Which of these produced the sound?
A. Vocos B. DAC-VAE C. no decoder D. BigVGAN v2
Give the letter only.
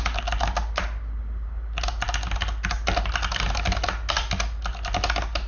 C